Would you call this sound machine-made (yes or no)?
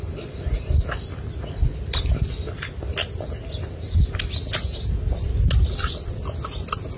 no